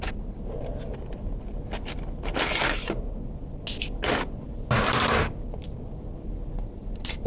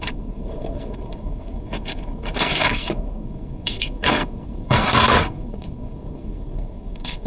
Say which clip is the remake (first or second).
second